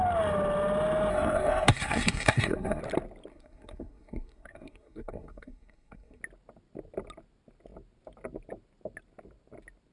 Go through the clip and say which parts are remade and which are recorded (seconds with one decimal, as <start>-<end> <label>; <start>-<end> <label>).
0.0-1.1 recorded; 1.1-2.8 remade; 2.8-3.3 recorded; 3.3-6.2 remade; 6.2-9.9 recorded